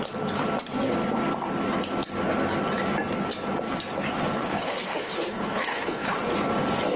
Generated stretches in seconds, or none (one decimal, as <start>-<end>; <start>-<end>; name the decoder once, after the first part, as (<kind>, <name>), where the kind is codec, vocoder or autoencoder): 4.4-6.3 (codec, HILCodec)